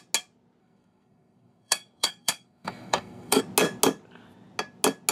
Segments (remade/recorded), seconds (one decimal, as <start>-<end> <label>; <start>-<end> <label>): 0.0-0.6 recorded; 0.6-3.4 remade; 3.4-5.1 recorded

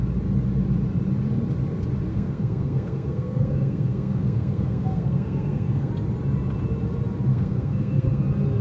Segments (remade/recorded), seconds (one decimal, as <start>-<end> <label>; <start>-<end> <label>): 0.0-2.1 recorded; 2.1-5.9 remade; 5.9-7.3 recorded; 7.3-8.2 remade; 8.2-8.6 recorded